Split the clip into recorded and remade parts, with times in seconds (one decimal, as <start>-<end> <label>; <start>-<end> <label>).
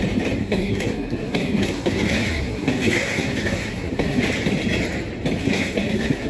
0.0-0.4 recorded; 0.4-4.2 remade; 4.2-5.4 recorded; 5.4-6.3 remade